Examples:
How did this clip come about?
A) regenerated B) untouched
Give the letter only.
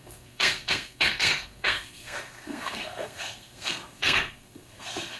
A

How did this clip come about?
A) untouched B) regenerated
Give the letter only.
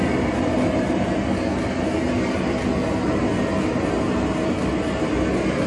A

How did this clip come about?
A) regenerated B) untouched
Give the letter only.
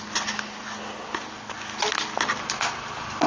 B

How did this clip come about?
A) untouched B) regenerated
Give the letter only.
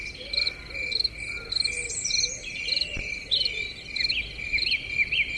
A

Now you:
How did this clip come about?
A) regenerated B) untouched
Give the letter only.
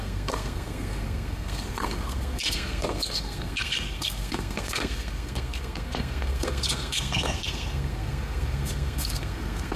A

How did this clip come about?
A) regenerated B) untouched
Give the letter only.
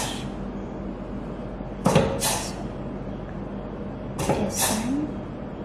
B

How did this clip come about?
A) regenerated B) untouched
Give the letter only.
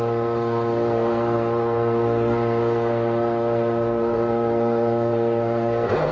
A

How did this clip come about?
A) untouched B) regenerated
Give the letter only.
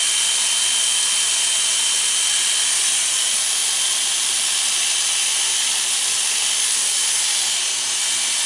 A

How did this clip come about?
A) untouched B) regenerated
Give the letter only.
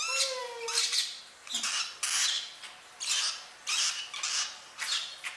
A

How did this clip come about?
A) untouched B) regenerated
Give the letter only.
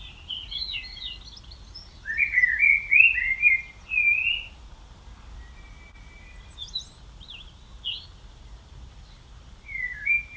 A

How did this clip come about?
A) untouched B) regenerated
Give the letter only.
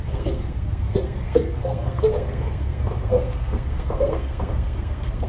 B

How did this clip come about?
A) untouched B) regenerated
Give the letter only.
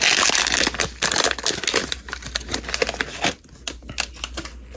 A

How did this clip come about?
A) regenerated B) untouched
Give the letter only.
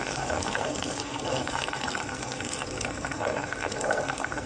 A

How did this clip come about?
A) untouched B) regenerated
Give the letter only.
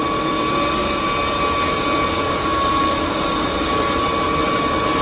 A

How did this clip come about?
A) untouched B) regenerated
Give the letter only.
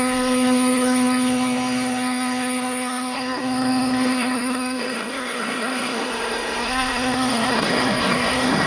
B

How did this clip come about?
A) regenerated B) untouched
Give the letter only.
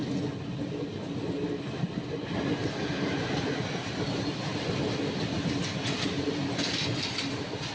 B